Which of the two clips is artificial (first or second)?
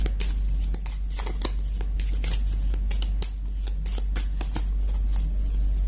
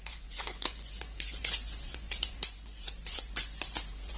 second